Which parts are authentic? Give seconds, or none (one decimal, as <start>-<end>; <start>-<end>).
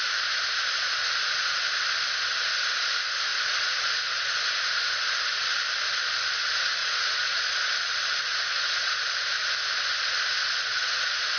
0.0-3.3; 4.3-6.8; 7.6-8.3; 8.9-10.7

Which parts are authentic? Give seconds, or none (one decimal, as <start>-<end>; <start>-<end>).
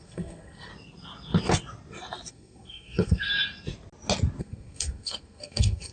0.7-2.3; 3.3-4.4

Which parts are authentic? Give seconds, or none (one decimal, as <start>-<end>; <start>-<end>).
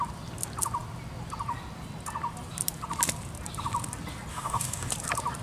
0.0-4.3; 4.9-5.4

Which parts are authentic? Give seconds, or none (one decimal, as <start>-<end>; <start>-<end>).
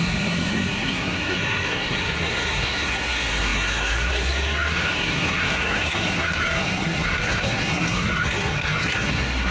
none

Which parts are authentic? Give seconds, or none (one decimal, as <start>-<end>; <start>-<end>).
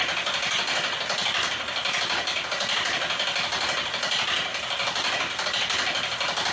0.0-4.5; 5.5-6.5